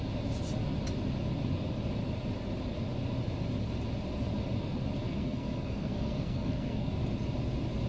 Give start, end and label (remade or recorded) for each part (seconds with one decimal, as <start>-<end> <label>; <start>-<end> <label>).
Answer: 0.0-5.1 recorded; 5.1-6.9 remade; 6.9-7.9 recorded